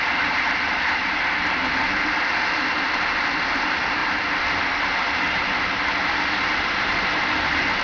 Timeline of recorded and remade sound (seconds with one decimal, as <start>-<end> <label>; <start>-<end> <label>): 0.0-7.8 recorded